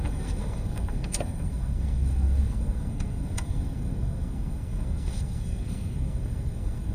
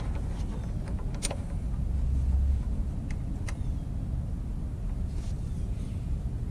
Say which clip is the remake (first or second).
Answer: first